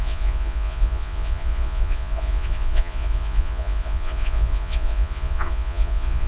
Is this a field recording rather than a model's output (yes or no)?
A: no